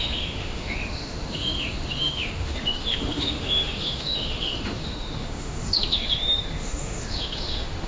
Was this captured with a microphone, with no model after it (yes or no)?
no